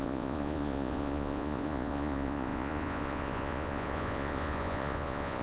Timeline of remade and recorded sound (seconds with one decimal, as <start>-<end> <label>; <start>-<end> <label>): 0.0-5.4 remade